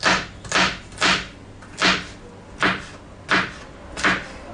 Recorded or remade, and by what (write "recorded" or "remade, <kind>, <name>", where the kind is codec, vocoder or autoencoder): recorded